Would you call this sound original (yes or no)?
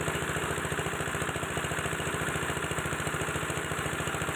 no